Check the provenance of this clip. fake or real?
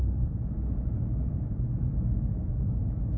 real